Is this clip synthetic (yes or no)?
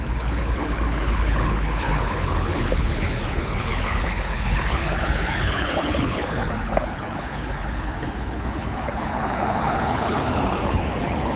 yes